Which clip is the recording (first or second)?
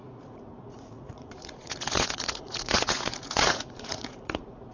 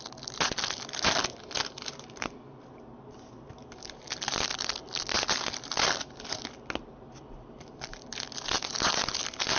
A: second